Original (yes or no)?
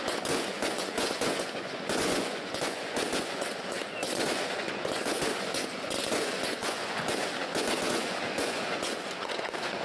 no